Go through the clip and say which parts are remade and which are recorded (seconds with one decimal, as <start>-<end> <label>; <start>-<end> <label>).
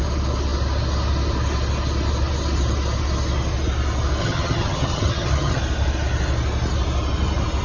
0.0-4.2 recorded; 4.2-5.6 remade; 5.6-7.6 recorded